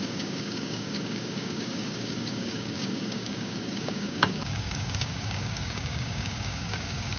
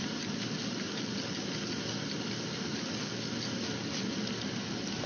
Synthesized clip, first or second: first